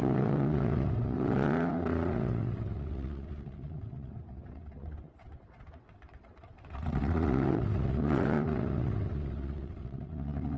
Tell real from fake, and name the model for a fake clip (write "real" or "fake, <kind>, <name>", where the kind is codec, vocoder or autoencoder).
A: fake, vocoder, WaveNeXt